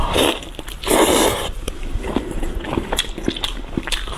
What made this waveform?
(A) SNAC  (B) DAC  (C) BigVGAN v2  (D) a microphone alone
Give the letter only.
C